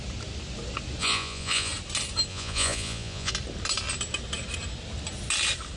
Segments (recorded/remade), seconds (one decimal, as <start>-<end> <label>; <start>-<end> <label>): 0.0-1.0 recorded; 1.0-1.7 remade; 1.7-2.3 recorded; 2.3-3.3 remade; 3.3-5.8 recorded